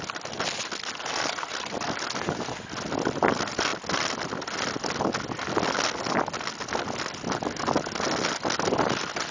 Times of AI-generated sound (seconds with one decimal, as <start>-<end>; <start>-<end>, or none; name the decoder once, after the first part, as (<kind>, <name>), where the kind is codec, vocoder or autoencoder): none